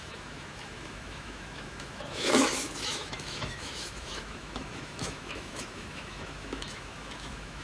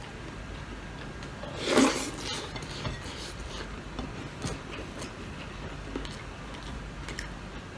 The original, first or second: second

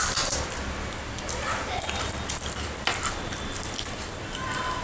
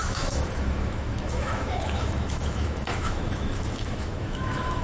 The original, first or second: first